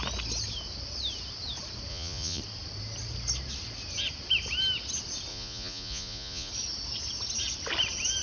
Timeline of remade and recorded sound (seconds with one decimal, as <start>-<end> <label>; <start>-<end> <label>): 0.0-1.9 recorded; 1.9-2.4 remade; 2.4-5.3 recorded; 5.3-6.5 remade; 6.5-8.2 recorded